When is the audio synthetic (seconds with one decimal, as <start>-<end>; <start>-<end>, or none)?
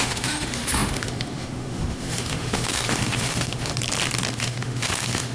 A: 0.0-3.7; 4.3-5.3